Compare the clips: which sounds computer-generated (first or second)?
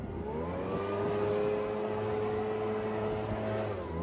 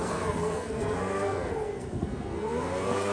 second